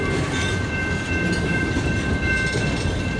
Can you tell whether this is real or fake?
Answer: real